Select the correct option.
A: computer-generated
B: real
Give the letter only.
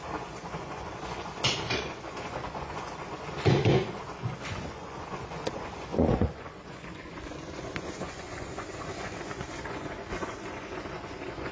A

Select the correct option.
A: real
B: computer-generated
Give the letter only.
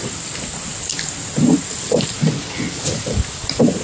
A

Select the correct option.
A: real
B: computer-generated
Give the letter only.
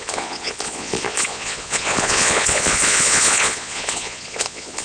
B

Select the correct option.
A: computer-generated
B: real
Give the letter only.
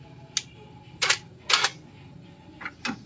B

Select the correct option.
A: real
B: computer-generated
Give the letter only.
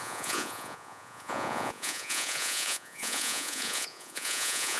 B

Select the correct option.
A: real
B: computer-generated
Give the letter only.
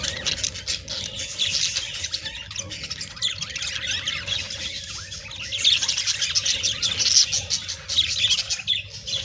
A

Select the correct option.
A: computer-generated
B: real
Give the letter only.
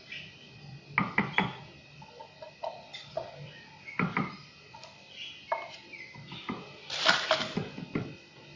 B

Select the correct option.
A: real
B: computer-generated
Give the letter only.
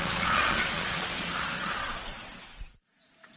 B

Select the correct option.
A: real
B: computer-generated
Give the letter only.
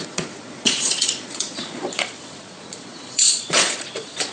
B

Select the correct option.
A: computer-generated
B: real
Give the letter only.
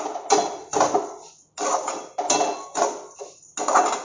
B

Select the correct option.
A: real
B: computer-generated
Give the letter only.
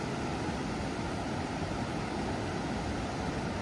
A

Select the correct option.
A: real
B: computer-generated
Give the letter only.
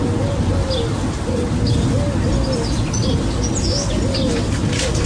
A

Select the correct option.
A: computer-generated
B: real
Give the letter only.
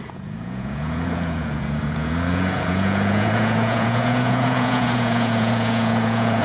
A